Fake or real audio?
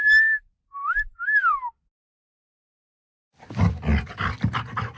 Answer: real